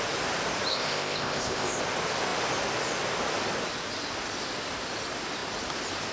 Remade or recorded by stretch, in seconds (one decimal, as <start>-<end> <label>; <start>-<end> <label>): 0.0-0.7 recorded; 0.7-1.8 remade; 1.8-6.1 recorded